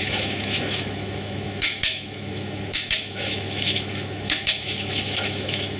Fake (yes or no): yes